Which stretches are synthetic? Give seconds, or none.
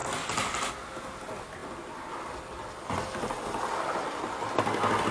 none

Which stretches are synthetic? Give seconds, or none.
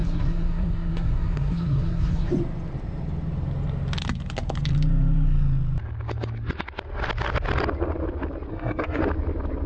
0.0-2.3; 8.5-9.0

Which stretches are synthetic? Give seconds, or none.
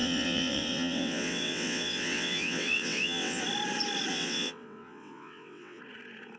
0.0-3.4; 4.1-5.8